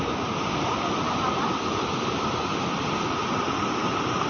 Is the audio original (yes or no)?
yes